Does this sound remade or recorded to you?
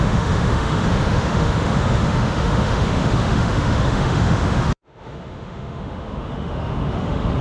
remade